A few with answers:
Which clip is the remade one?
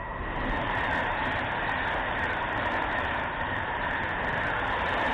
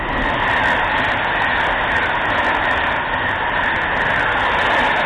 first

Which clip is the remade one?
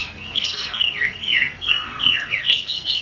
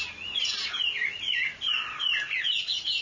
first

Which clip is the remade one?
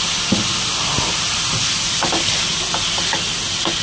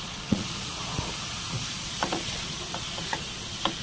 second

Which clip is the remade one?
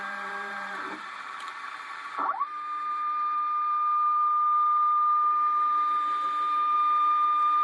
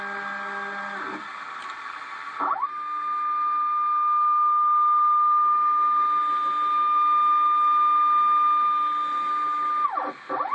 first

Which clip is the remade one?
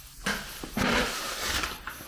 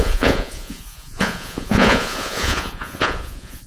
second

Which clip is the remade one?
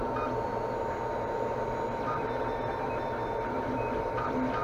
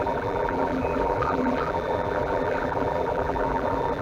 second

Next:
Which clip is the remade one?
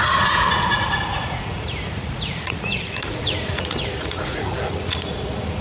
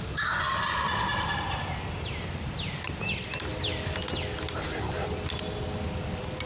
first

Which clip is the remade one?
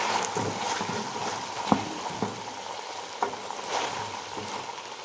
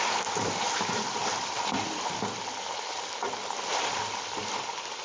second